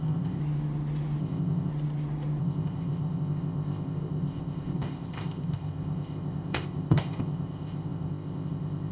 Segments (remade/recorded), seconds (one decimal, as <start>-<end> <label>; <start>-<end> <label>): 0.0-0.4 remade; 0.4-1.2 recorded; 1.2-1.7 remade; 1.7-2.4 recorded; 2.4-8.9 remade